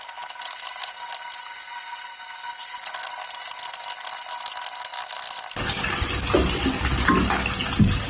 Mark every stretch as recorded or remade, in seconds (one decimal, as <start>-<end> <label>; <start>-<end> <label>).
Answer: 0.0-8.1 recorded